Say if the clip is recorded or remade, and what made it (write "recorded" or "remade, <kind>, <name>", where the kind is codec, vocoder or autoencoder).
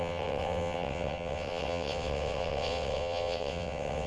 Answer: remade, vocoder, WaveNeXt